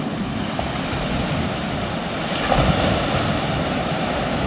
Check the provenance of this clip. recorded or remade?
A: recorded